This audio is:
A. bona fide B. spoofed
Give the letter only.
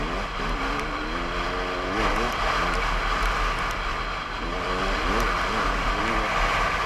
A